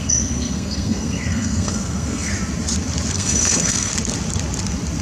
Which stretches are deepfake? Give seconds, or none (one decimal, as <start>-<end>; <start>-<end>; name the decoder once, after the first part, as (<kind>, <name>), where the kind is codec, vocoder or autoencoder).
0.0-2.3 (codec, SNAC); 3.1-3.9